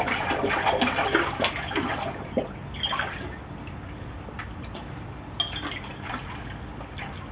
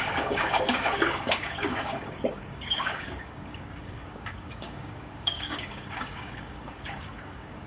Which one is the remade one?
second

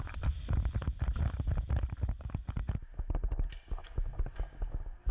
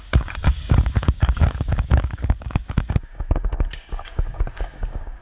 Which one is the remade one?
second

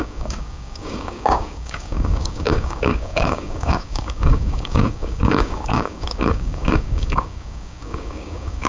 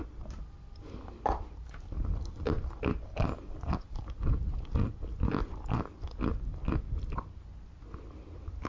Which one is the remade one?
first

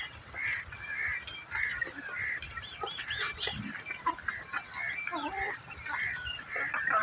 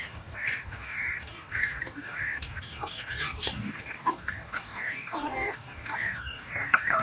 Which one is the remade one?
second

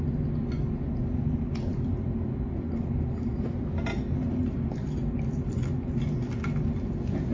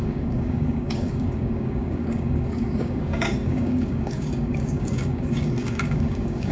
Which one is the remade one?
second